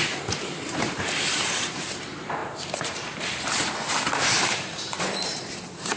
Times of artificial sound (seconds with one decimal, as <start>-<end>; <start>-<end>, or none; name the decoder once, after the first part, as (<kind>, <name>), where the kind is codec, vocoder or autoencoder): 0.0-6.0 (vocoder, BigVGAN v2)